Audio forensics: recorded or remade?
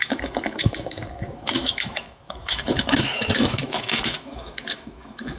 remade